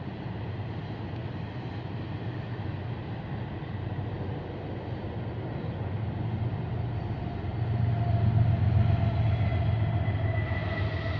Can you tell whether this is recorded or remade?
recorded